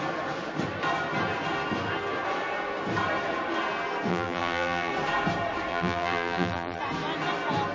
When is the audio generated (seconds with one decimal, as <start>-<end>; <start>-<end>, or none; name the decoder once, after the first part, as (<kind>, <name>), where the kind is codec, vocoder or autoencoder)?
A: 4.1-4.9 (vocoder, BigVGAN v2); 5.7-6.8